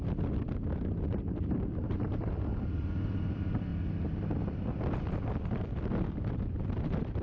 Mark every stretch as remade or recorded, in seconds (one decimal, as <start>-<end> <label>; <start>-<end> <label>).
0.0-3.7 remade; 3.7-4.8 recorded; 4.8-7.2 remade